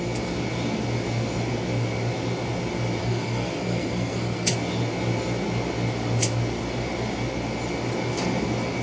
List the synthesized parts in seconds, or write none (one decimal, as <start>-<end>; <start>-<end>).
3.0-4.5